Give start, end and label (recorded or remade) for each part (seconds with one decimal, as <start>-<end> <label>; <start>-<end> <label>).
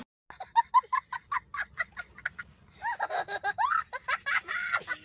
0.0-4.0 recorded; 4.0-4.6 remade; 4.6-5.0 recorded